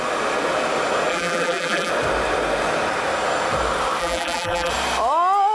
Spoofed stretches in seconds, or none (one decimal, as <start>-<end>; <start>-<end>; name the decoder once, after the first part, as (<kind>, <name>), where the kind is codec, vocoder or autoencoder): 1.1-1.9 (vocoder, BigVGAN v2); 4.0-4.7